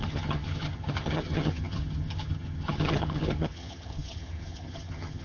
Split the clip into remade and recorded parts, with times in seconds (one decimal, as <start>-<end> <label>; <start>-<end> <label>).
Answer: 0.0-5.2 remade

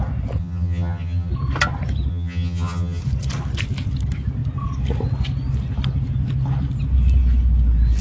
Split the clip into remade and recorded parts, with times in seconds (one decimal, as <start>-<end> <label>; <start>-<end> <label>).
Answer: 0.0-0.4 recorded; 0.4-1.3 remade; 1.3-2.1 recorded; 2.1-3.0 remade; 3.0-8.0 recorded